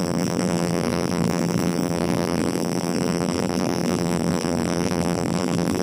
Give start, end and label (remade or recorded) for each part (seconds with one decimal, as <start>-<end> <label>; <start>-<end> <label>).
0.0-5.8 remade